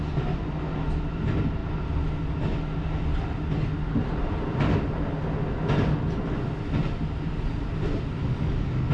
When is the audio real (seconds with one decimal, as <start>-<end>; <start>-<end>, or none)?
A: 0.0-8.2

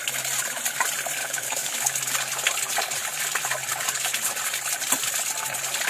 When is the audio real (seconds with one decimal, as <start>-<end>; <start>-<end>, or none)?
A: 0.0-1.2; 2.0-3.7; 4.3-5.9